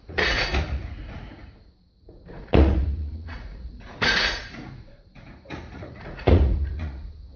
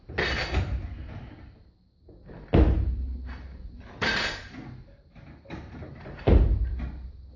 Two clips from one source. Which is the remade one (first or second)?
first